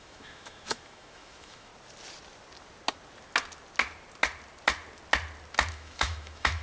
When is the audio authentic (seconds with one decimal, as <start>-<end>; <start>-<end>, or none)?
1.7-5.7